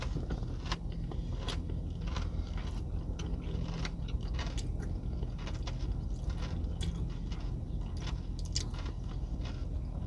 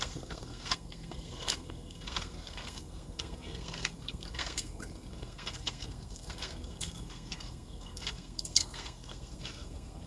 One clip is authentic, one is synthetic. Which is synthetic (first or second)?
second